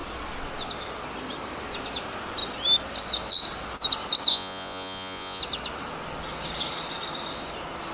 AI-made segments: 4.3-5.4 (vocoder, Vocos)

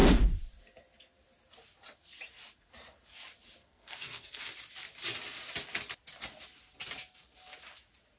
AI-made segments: 3.6-4.5 (codec, SNAC)